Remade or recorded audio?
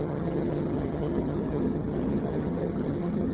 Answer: remade